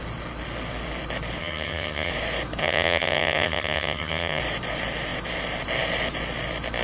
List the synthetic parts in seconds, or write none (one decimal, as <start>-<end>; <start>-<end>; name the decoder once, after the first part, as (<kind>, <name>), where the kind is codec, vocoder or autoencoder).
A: 1.4-2.1 (vocoder, HiFi-GAN); 2.6-4.4